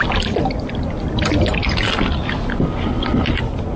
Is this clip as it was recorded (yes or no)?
yes